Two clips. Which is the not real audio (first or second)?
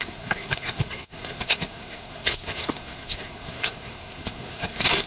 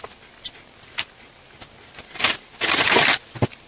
first